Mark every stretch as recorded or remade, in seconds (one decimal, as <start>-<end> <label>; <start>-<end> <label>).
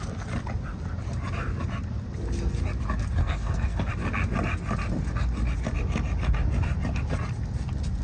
0.0-3.2 recorded; 3.2-3.9 remade; 3.9-8.0 recorded